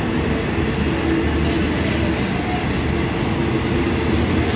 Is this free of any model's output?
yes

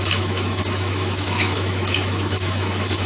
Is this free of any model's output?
no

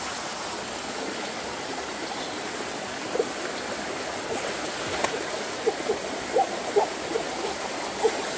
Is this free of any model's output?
yes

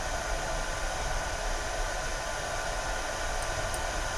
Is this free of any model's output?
yes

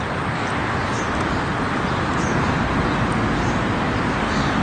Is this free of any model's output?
yes